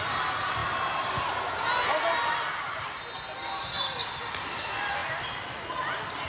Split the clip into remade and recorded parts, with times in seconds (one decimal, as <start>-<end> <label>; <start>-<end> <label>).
0.0-5.0 recorded; 5.0-5.6 remade; 5.6-6.3 recorded